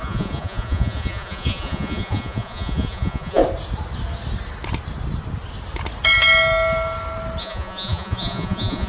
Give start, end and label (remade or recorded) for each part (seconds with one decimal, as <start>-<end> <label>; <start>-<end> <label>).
0.0-3.4 remade; 3.4-7.4 recorded; 7.4-8.9 remade